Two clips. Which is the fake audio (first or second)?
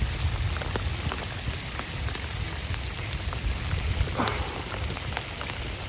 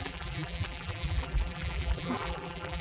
second